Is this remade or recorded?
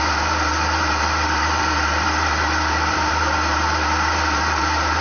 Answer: remade